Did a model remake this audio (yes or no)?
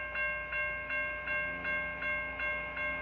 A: no